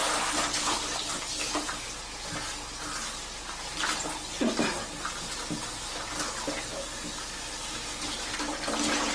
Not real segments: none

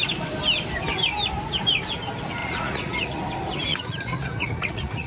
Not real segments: 2.4-3.2 (vocoder, Vocos); 3.7-5.1

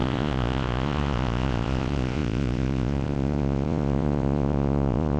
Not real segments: 0.0-5.2 (vocoder, Vocos)

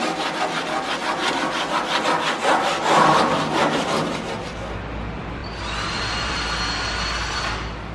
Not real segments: none

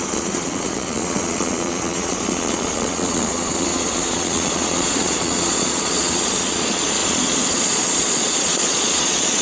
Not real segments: 0.0-9.4 (vocoder, Vocos)

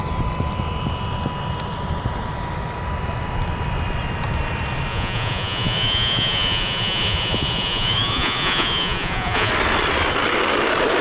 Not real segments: 4.9-9.5 (vocoder, Vocos)